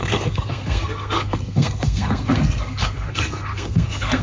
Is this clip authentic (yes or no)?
no